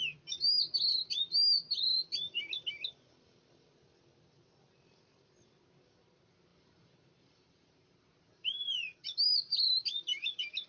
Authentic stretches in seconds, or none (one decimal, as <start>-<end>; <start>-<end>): 0.0-6.5; 9.6-10.7